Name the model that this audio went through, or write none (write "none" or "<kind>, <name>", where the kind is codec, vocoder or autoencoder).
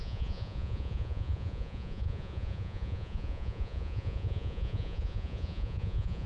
vocoder, Vocos